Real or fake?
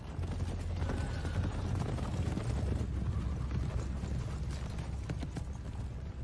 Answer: real